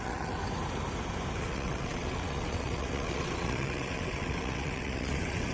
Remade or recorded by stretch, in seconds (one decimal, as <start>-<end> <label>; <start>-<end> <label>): 0.0-0.4 remade; 0.4-1.4 recorded; 1.4-5.5 remade